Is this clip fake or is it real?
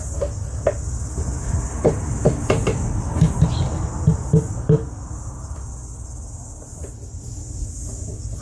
real